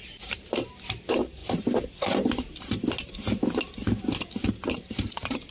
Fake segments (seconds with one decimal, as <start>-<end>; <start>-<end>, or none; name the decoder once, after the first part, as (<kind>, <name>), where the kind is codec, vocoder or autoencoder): 0.0-1.4 (vocoder, BigVGAN v2); 4.7-5.5